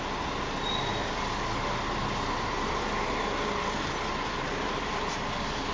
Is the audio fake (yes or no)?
no